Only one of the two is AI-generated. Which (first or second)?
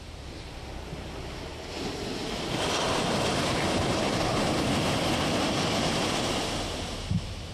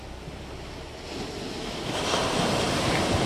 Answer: first